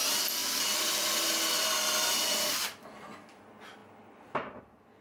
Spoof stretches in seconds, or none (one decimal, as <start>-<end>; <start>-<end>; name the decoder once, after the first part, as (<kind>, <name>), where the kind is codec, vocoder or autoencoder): none